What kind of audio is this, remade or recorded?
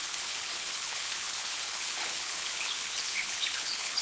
remade